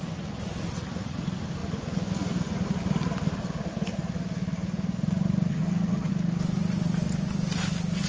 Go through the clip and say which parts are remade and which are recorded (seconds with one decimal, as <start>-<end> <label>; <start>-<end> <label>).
0.0-5.5 recorded; 5.5-6.1 remade; 6.1-8.1 recorded